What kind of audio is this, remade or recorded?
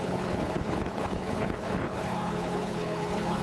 remade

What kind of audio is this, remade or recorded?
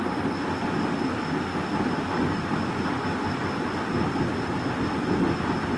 recorded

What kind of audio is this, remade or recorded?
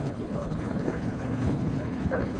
remade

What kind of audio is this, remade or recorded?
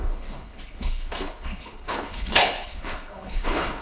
remade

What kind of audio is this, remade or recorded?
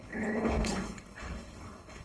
remade